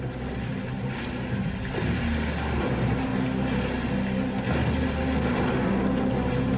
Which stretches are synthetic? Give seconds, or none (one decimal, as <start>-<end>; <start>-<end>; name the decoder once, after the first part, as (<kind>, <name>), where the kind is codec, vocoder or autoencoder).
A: none